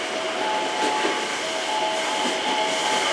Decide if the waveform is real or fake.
real